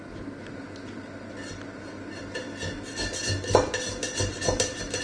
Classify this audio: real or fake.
real